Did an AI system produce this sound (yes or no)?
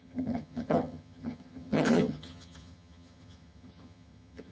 yes